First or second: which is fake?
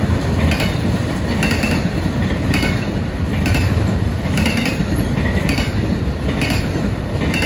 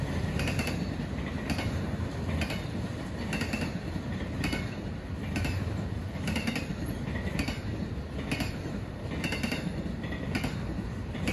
first